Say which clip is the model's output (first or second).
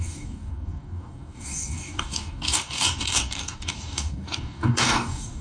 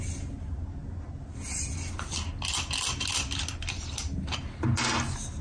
first